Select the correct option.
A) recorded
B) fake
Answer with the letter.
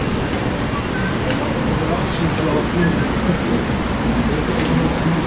A